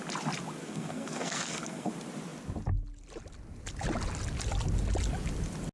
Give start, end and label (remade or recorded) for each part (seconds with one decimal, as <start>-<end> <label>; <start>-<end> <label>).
0.0-0.6 recorded; 0.6-1.9 remade; 1.9-5.7 recorded